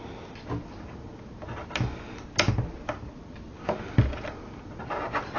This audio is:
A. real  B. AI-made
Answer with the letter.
A